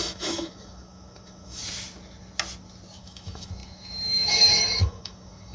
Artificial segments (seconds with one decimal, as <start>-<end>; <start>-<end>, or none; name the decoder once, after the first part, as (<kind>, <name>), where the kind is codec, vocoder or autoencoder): 0.0-1.6 (autoencoder, DAC-VAE); 3.0-5.5